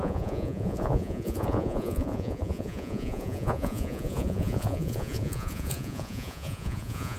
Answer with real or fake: fake